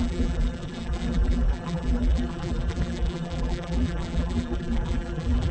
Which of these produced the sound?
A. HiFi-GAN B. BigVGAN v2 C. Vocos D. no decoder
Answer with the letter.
B